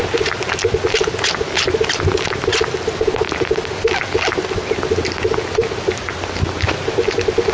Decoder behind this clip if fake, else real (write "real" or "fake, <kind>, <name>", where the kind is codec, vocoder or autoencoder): real